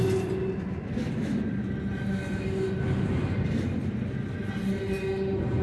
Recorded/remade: recorded